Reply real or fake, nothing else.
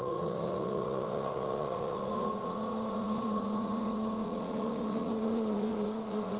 fake